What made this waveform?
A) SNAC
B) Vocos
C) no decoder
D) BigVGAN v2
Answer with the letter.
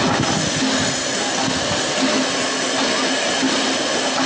C